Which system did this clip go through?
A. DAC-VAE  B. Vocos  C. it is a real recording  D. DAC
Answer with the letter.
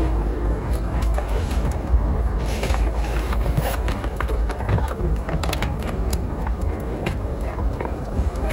D